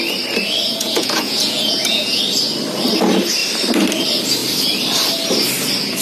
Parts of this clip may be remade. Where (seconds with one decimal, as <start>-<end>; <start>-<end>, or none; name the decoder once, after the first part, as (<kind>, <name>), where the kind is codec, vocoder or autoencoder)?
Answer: 0.7-2.2 (vocoder, Vocos)